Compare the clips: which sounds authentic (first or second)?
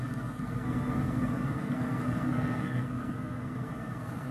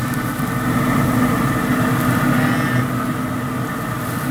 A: second